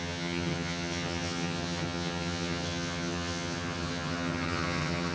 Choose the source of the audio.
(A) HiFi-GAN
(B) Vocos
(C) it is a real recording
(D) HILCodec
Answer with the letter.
A